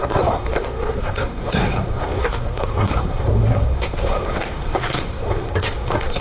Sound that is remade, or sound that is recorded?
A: remade